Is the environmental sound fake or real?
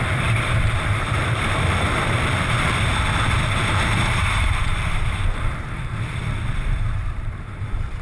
fake